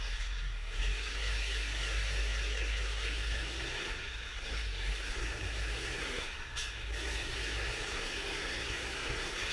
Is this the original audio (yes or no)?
no